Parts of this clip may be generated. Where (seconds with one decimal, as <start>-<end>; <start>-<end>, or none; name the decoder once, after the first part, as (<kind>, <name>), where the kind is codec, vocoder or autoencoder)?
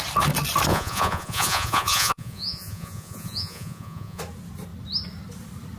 0.7-4.2 (vocoder, Vocos)